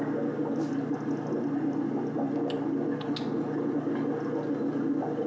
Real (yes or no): yes